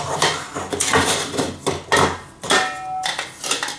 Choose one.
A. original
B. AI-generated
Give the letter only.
A